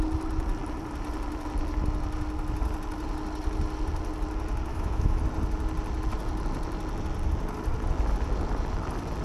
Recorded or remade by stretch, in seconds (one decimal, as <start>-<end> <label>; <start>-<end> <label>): 0.0-4.7 recorded; 4.7-5.2 remade; 5.2-9.2 recorded

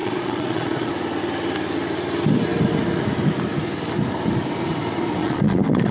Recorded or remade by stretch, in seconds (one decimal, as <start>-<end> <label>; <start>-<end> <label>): 0.0-0.9 remade; 0.9-5.2 recorded; 5.2-5.9 remade